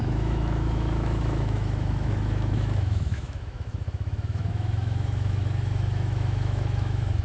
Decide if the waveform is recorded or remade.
remade